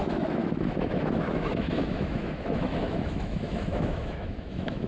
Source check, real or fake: fake